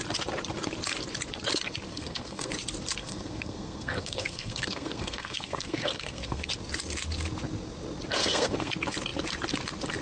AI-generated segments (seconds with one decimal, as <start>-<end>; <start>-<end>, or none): 1.9-2.5; 3.0-6.5; 8.2-8.7